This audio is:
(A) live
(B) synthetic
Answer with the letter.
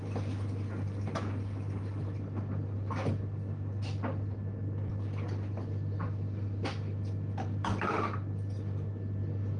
A